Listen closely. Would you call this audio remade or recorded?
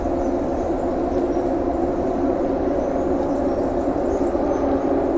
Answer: recorded